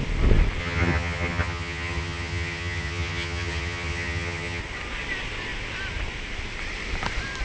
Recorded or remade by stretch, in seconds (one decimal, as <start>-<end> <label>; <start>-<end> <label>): 0.0-0.6 recorded; 0.6-4.6 remade; 4.6-7.4 recorded